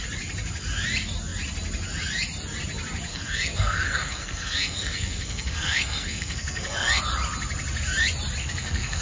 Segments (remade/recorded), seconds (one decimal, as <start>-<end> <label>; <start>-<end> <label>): 0.0-3.1 recorded; 3.1-7.0 remade; 7.0-8.4 recorded; 8.4-9.0 remade